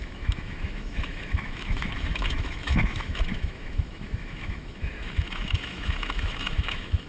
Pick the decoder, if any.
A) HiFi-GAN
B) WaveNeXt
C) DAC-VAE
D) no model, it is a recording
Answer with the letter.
C